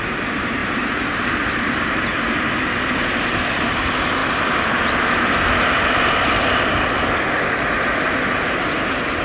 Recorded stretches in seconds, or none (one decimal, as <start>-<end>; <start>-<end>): 0.0-9.2